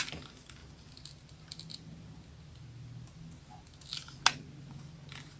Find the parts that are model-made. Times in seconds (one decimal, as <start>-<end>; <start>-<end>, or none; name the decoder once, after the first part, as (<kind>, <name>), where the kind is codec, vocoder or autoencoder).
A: none